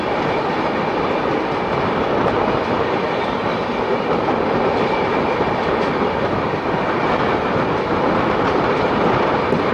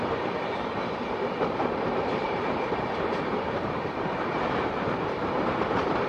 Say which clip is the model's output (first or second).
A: second